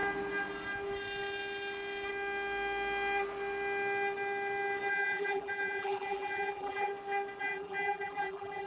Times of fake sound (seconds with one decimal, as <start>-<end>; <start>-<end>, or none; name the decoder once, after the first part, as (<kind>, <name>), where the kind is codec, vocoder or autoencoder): 4.9-6.9 (vocoder, BigVGAN v2); 7.4-8.7